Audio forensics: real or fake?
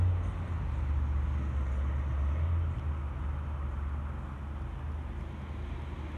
real